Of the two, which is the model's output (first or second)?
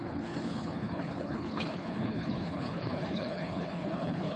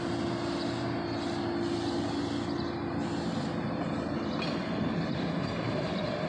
first